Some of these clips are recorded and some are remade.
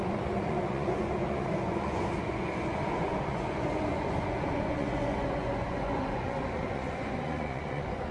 remade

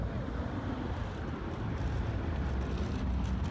recorded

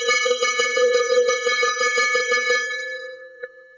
remade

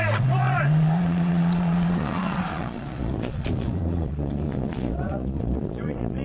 remade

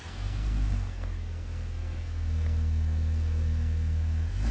remade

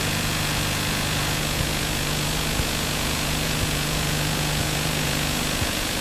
remade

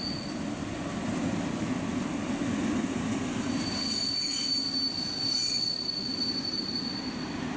recorded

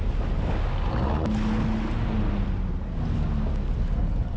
recorded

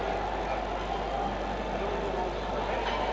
recorded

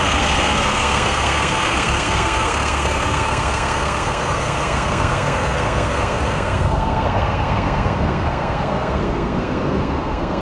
remade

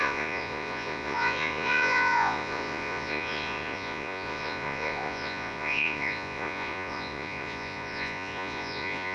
remade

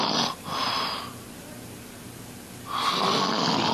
recorded